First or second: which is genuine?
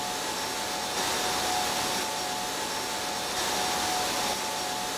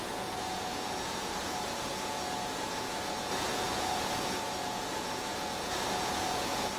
first